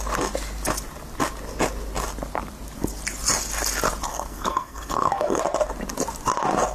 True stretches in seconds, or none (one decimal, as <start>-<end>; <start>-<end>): 0.0-4.1; 5.4-6.7